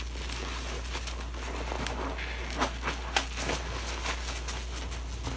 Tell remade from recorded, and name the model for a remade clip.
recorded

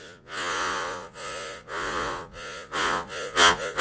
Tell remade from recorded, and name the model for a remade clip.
remade, vocoder, Vocos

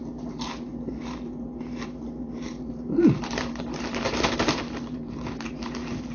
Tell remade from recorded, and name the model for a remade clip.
remade, vocoder, BigVGAN v2